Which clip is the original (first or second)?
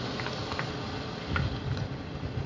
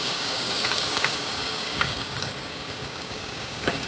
first